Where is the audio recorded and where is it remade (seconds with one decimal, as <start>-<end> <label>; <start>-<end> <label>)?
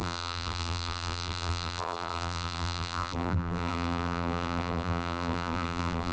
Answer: 0.0-6.1 remade